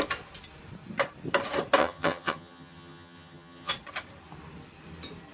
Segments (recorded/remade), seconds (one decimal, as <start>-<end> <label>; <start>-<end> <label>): 0.0-1.8 recorded; 1.8-3.7 remade; 3.7-5.3 recorded